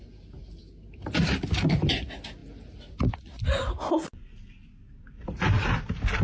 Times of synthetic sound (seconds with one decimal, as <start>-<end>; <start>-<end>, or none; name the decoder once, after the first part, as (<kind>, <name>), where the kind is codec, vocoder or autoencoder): none